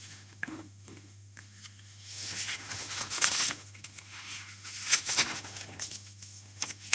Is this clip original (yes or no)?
no